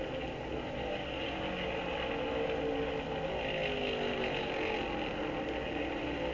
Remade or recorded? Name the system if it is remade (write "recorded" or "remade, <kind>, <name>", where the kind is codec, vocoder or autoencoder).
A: recorded